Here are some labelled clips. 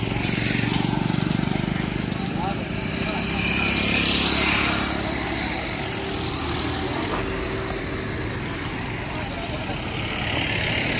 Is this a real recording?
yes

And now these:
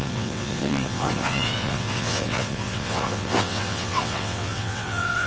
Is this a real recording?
no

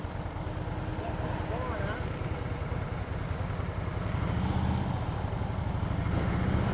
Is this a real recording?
yes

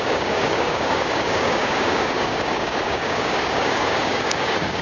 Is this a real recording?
no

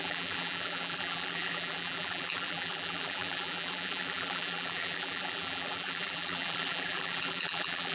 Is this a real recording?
no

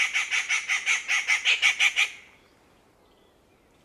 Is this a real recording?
yes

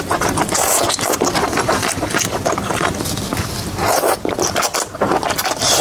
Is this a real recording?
no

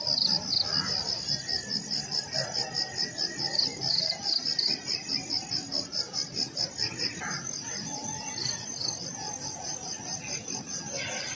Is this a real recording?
yes